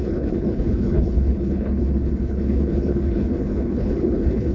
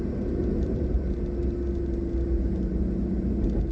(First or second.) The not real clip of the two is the first